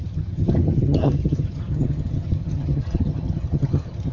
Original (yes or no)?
no